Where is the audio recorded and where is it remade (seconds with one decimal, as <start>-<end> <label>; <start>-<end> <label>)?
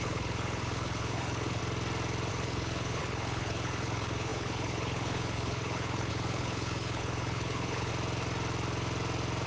0.0-1.6 remade; 1.6-2.3 recorded; 2.3-7.9 remade; 7.9-9.5 recorded